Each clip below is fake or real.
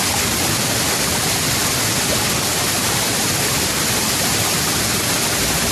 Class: real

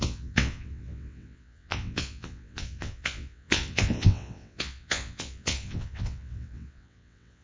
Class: fake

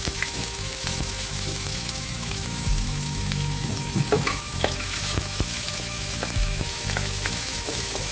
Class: fake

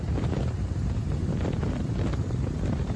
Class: fake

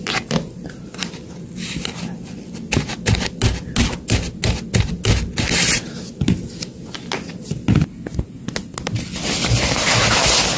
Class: real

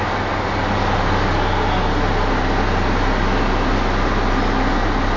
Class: real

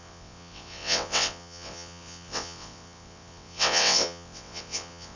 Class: fake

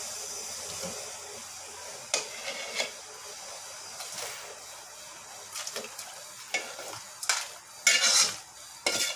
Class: real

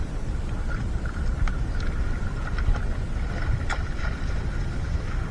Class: real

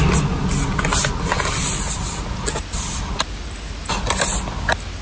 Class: real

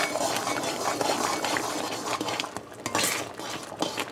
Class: real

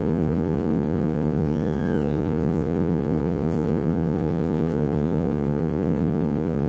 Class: fake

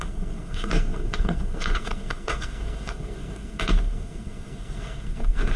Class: fake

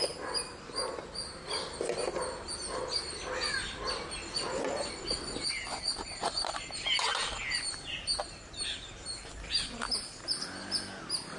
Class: real